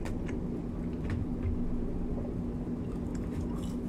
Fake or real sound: real